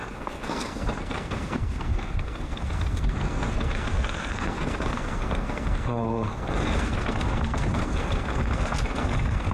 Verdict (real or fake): fake